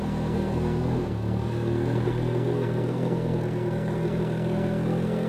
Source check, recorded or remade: remade